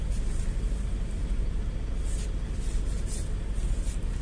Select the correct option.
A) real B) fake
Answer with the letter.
A